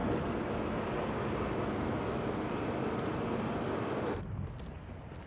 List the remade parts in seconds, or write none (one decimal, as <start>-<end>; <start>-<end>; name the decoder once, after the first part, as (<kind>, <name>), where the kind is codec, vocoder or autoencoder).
none